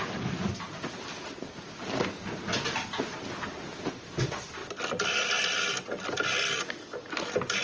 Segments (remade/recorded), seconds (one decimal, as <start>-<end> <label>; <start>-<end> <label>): 0.0-7.6 recorded